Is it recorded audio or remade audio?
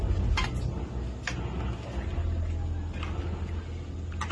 recorded